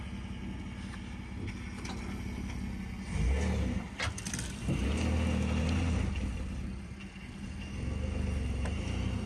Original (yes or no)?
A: yes